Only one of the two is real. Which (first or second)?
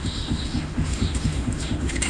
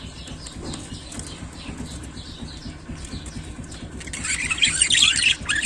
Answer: second